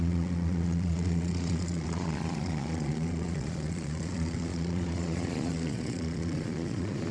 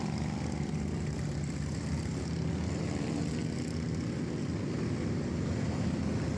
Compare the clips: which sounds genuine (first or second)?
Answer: second